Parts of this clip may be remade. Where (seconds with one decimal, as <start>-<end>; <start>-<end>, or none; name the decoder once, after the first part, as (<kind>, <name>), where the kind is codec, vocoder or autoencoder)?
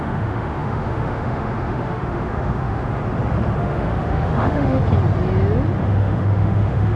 0.0-3.0 (autoencoder, DAC-VAE); 3.6-4.8; 5.8-7.0